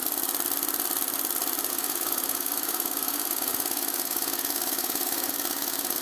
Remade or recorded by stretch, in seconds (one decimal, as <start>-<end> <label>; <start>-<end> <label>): 0.0-1.7 recorded; 1.7-6.0 remade